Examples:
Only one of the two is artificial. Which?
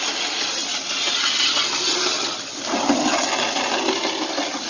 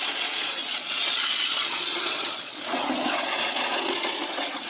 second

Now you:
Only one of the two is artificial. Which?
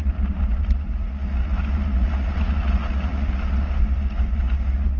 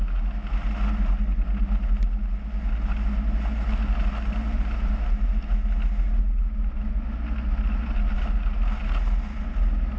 first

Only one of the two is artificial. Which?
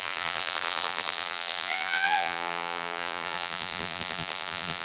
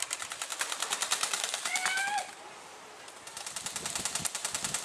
first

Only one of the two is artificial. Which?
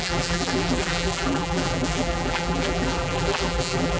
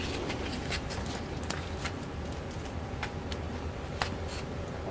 first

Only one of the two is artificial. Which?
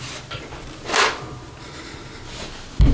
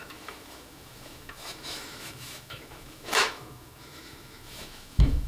second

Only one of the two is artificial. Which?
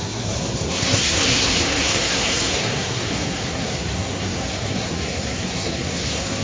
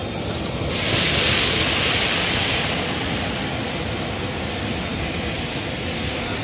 first